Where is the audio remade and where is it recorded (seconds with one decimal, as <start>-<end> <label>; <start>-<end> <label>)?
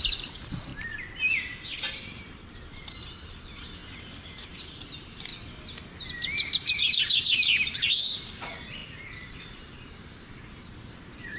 0.0-0.7 remade; 0.7-2.5 recorded; 2.5-3.8 remade; 3.8-4.5 recorded; 4.5-5.3 remade; 5.3-6.8 recorded; 6.8-11.4 remade